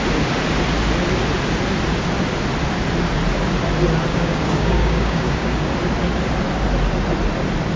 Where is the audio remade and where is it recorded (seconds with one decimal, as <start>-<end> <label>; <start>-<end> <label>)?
0.0-4.1 recorded; 4.1-5.7 remade; 5.7-7.8 recorded